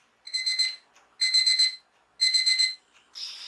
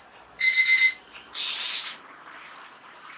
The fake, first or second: second